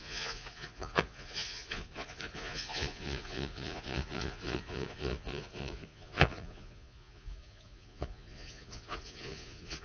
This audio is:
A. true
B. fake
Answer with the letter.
B